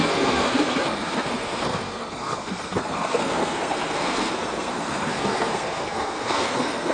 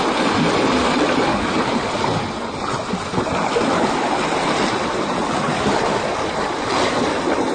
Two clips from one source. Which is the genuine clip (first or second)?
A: second